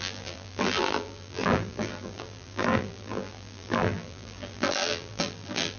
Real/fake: fake